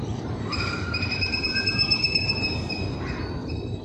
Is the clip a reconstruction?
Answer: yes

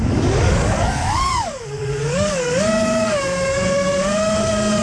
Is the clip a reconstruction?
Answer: yes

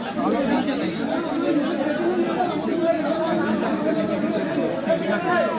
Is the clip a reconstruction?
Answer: no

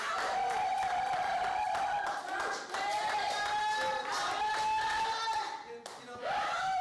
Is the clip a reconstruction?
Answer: no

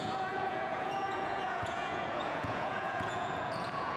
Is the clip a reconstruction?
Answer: yes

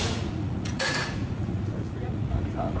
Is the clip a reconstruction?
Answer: yes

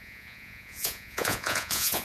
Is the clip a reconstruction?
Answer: yes